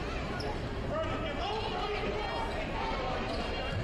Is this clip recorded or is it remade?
recorded